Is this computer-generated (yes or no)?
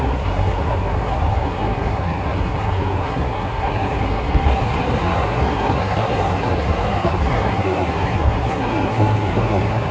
yes